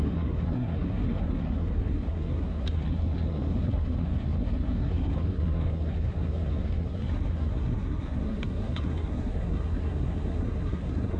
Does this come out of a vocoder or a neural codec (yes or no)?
yes